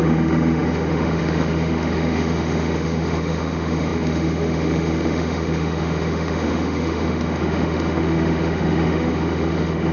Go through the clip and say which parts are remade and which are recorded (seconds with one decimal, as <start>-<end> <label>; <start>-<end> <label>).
0.0-9.9 remade